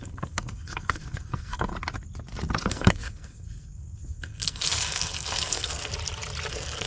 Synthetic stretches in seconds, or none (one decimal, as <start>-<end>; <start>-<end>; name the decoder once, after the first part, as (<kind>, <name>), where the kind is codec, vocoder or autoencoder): 0.0-1.7 (codec, SNAC); 2.6-5.9; 6.5-6.9